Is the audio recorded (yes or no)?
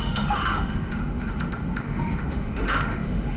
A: no